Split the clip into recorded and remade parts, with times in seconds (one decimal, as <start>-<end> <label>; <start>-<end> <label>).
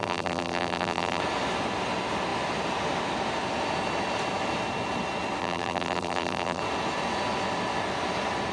0.0-1.2 remade; 1.2-5.4 recorded; 5.4-6.6 remade; 6.6-8.5 recorded